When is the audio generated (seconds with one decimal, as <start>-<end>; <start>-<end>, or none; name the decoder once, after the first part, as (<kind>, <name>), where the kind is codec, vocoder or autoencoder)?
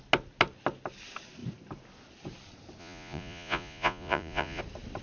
2.8-4.6 (vocoder, Vocos)